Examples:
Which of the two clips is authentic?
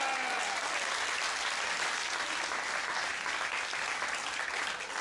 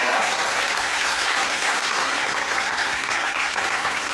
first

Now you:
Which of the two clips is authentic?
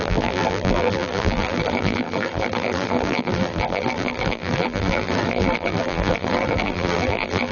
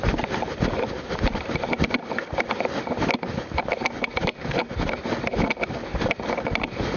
second